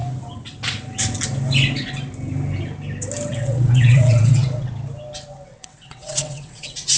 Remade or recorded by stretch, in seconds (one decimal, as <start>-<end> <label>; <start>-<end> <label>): 0.0-3.3 recorded; 3.3-4.7 remade; 4.7-5.5 recorded; 5.5-7.0 remade